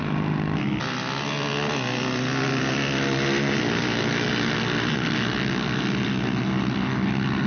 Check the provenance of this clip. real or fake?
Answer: real